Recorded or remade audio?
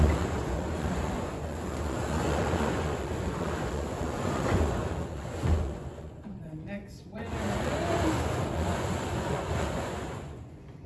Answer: remade